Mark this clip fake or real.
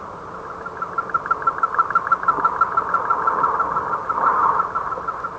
real